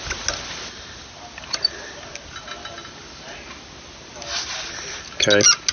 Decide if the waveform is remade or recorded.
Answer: recorded